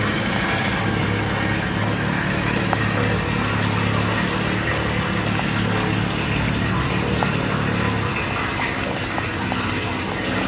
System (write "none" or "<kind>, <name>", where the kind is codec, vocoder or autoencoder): none